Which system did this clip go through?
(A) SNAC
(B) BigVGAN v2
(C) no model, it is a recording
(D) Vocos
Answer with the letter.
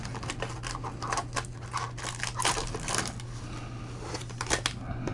C